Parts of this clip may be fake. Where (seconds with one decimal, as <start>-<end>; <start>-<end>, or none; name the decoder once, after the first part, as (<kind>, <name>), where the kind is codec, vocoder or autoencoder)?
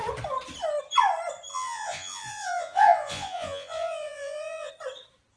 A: 1.5-4.7 (vocoder, Vocos)